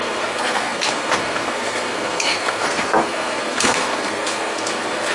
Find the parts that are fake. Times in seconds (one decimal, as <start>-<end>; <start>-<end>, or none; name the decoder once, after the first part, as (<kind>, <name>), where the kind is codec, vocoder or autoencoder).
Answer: 0.0-5.1 (codec, SNAC)